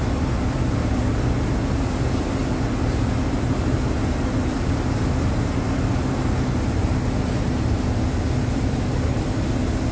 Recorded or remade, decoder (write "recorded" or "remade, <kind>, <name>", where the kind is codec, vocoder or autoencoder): recorded